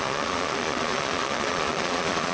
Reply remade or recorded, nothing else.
remade